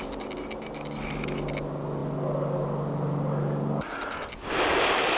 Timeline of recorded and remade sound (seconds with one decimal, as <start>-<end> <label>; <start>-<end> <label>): 0.0-5.2 recorded